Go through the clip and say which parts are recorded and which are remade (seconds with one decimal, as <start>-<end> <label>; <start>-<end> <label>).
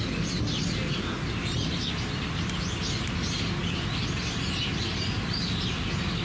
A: 0.0-6.2 recorded